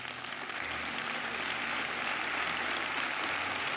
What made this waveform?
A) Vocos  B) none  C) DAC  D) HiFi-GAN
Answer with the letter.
B